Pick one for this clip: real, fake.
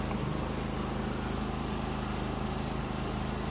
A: real